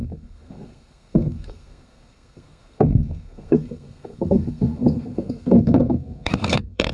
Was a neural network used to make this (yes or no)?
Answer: yes